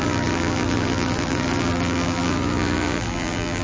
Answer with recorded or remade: remade